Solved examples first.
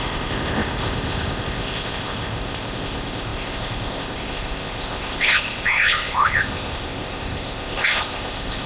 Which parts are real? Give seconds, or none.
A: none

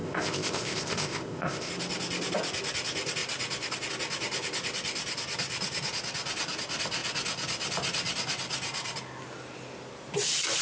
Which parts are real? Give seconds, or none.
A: 1.7-10.6

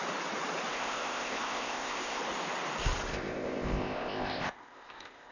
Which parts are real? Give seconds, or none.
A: 0.0-0.7; 2.2-3.1